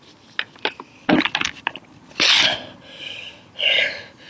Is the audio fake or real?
real